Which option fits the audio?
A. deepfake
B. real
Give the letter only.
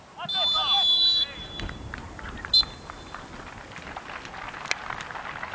B